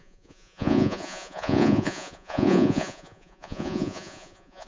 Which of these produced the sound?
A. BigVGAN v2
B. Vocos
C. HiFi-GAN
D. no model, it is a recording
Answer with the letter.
B